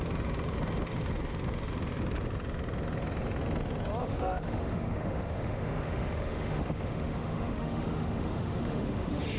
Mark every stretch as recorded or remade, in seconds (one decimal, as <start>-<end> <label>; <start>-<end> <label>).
0.0-4.0 recorded; 4.0-9.4 remade